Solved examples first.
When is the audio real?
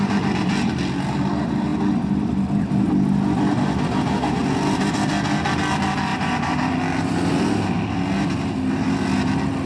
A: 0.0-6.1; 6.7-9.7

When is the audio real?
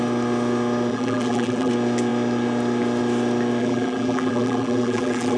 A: 0.0-0.9; 1.7-3.6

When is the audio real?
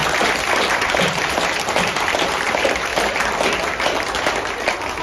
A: 0.0-0.6; 2.9-5.0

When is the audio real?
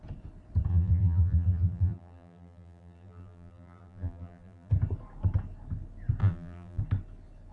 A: 0.0-0.7; 4.7-6.2; 6.8-7.5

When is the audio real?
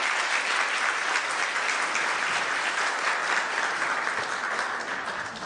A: 0.0-5.5